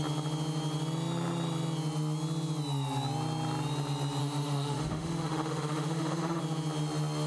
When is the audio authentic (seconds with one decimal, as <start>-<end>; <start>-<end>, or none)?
0.0-4.2; 6.4-7.3